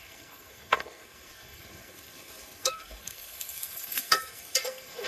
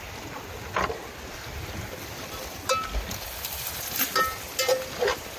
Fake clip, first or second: first